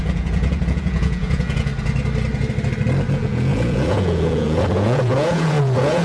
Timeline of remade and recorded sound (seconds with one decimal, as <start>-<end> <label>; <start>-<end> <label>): 0.0-1.7 remade; 1.7-3.1 recorded; 3.1-6.0 remade